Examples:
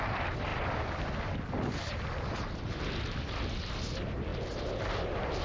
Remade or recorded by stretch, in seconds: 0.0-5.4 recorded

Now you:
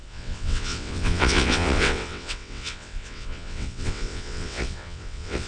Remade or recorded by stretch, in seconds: 0.0-5.5 remade